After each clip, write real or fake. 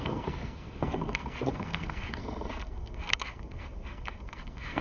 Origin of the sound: fake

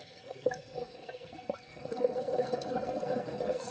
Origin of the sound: fake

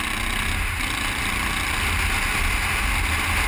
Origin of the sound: real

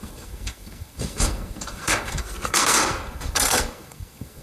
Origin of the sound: fake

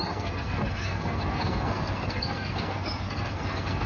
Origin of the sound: fake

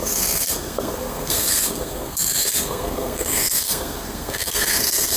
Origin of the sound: fake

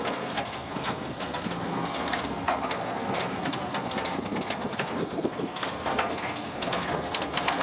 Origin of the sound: fake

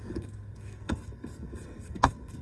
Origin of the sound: fake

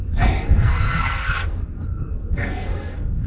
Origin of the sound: fake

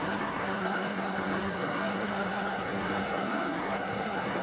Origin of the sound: fake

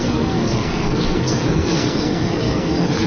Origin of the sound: fake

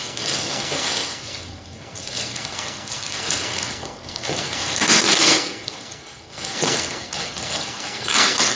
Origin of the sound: fake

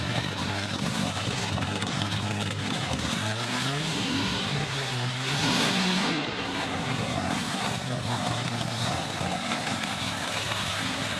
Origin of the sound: fake